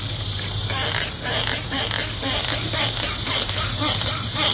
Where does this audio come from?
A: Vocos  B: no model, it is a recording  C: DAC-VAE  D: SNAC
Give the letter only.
B